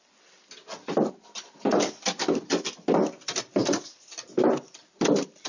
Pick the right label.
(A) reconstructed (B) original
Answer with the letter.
A